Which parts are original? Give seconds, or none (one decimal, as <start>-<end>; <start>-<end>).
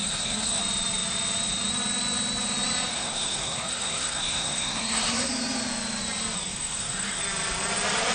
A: 0.6-2.9; 5.3-6.5; 7.2-8.1